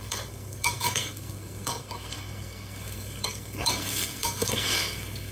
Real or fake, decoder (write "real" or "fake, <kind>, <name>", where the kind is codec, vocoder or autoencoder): fake, codec, SNAC